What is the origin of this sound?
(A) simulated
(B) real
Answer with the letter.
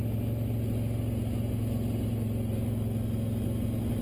B